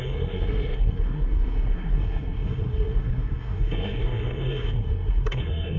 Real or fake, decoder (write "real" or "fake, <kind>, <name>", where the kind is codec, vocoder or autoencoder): fake, codec, SNAC